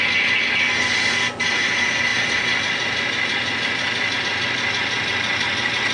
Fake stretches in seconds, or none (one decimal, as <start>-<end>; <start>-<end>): none